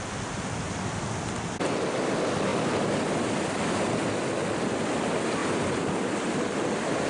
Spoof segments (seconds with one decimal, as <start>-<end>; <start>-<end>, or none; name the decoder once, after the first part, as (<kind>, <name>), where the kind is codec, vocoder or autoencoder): none